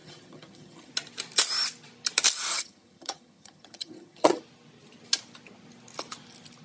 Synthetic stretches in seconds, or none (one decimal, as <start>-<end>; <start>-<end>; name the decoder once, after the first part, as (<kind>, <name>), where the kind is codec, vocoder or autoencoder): 0.0-0.9 (vocoder, HiFi-GAN); 2.5-4.4